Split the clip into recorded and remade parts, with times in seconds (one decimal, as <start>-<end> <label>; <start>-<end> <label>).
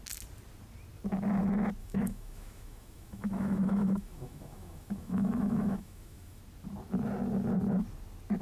0.0-1.8 recorded; 1.8-6.4 remade; 6.4-8.4 recorded